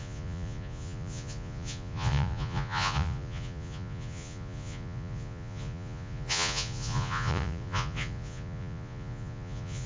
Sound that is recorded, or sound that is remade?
remade